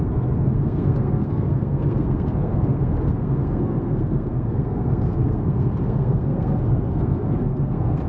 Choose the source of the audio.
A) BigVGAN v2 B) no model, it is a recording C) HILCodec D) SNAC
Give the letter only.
D